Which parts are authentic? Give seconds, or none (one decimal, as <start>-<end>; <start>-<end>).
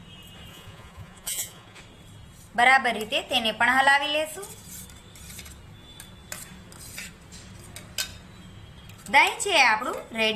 0.0-0.5; 1.8-10.4